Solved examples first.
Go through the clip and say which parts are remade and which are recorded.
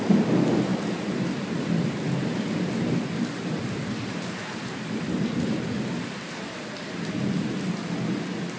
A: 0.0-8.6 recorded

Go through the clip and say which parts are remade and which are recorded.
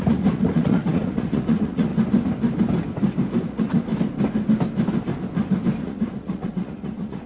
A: 0.0-1.9 remade; 1.9-3.4 recorded; 3.4-3.9 remade; 3.9-5.8 recorded; 5.8-7.3 remade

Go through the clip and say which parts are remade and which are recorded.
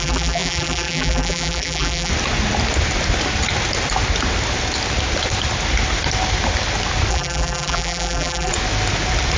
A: 0.0-2.1 remade; 2.1-7.1 recorded; 7.1-8.5 remade; 8.5-9.4 recorded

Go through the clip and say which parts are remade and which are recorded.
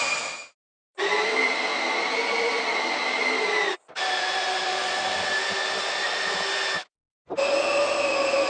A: 0.0-0.4 recorded; 0.4-1.2 remade; 1.2-8.5 recorded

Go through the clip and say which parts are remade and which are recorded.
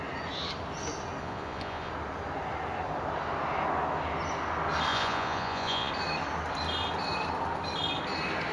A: 0.0-1.2 recorded; 1.2-1.9 remade; 1.9-4.9 recorded; 4.9-5.9 remade; 5.9-8.5 recorded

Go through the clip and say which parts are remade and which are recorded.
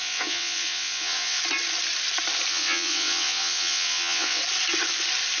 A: 0.0-1.4 remade; 1.4-2.5 recorded; 2.5-4.4 remade; 4.4-5.4 recorded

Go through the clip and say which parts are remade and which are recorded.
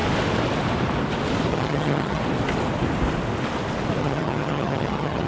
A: 0.0-1.5 recorded; 1.5-2.2 remade; 2.2-4.0 recorded; 4.0-5.3 remade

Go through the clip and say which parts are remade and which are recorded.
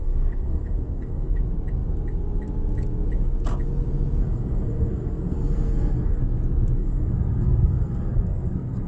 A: 0.0-1.4 remade; 1.4-4.2 recorded; 4.2-6.2 remade; 6.2-6.8 recorded; 6.8-8.9 remade